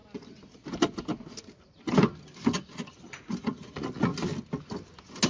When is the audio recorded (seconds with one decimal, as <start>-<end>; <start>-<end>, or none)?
0.0-3.2; 4.1-5.3